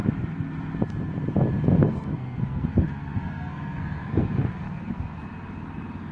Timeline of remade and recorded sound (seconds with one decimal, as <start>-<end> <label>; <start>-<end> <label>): 0.0-1.8 recorded; 1.8-5.2 remade; 5.2-6.1 recorded